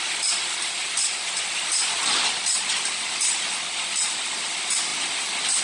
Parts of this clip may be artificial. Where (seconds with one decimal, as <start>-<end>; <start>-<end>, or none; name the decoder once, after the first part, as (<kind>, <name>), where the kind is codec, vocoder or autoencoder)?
none